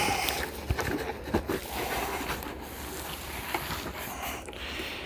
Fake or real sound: real